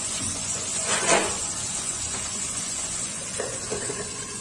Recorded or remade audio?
remade